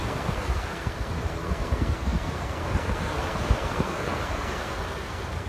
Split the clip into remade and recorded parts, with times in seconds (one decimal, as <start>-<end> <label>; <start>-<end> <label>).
0.0-5.5 remade